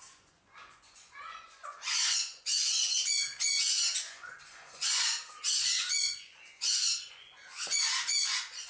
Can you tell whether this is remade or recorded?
remade